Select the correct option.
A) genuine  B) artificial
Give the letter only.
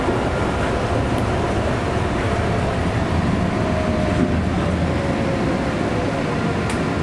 A